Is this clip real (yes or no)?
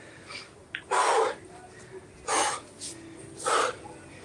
yes